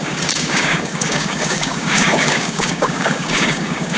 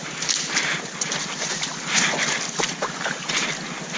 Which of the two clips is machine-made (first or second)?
first